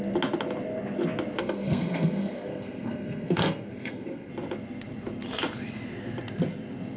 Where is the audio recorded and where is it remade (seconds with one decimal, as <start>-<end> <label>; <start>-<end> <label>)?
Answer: 0.0-1.4 recorded; 1.4-4.3 remade; 4.3-7.0 recorded